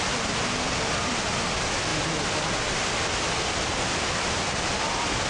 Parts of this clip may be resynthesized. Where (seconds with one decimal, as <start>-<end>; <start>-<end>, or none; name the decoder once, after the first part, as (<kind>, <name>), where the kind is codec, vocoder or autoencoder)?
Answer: none